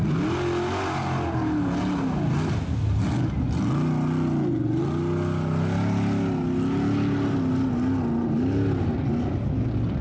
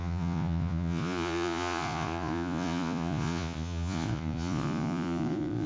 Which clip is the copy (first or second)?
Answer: second